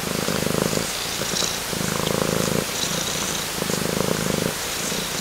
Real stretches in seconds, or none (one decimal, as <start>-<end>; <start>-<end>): 0.0-2.9; 4.1-5.2